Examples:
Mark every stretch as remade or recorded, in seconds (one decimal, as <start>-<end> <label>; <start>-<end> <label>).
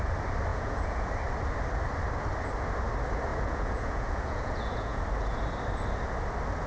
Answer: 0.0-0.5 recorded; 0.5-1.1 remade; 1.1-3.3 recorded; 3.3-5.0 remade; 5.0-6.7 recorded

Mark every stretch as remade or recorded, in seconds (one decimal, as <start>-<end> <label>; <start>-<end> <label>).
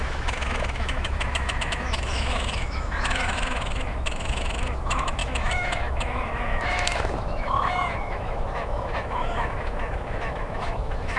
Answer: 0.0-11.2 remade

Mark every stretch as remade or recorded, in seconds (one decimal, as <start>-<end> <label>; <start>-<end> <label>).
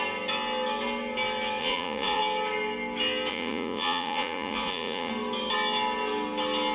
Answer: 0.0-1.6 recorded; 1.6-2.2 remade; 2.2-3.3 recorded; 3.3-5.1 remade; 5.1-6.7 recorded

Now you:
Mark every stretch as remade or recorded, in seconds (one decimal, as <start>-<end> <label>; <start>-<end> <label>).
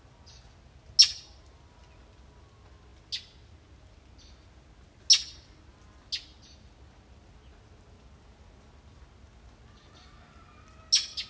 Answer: 0.0-11.3 recorded